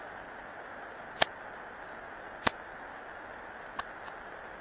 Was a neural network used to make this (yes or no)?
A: no